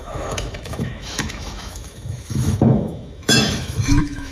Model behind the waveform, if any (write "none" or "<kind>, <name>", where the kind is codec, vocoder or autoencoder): autoencoder, DAC-VAE